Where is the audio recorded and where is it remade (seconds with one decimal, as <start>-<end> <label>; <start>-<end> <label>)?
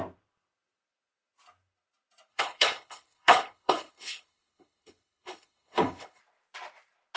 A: 0.0-2.3 recorded; 2.3-6.2 remade; 6.2-7.2 recorded